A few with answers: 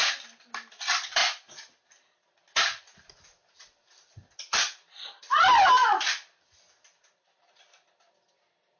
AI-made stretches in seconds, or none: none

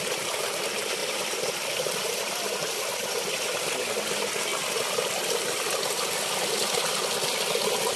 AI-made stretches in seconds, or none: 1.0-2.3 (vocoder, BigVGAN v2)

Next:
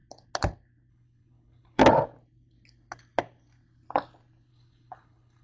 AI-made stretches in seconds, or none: 0.9-1.8 (codec, HILCodec); 4.5-5.4